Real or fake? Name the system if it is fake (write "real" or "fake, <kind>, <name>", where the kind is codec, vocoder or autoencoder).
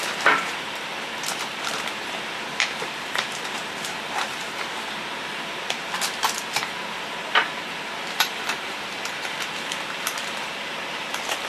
fake, vocoder, BigVGAN v2